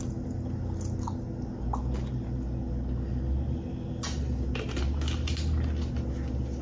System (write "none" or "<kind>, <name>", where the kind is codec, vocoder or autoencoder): none